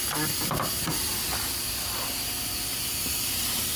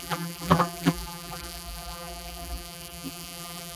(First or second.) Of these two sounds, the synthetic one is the second